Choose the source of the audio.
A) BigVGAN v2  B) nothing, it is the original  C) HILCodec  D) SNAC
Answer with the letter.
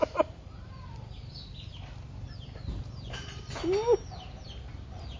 B